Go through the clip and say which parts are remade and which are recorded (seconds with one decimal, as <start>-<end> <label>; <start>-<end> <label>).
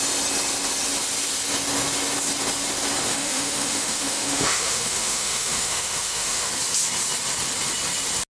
0.0-3.1 recorded; 3.1-6.5 remade; 6.5-8.3 recorded